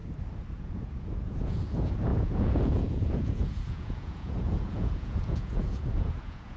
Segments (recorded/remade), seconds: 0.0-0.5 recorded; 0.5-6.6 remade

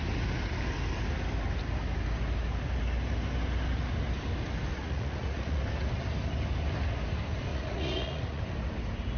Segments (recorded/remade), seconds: 0.0-4.7 recorded; 4.7-5.6 remade; 5.6-7.5 recorded; 7.5-8.4 remade; 8.4-9.2 recorded

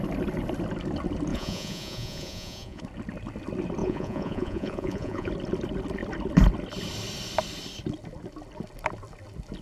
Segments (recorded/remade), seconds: 0.0-1.3 recorded; 1.3-2.8 remade; 2.8-3.8 recorded; 3.8-5.3 remade; 5.3-9.6 recorded

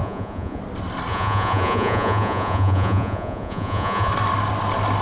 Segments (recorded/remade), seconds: 0.0-0.6 remade; 0.6-1.1 recorded; 1.1-4.1 remade; 4.1-5.0 recorded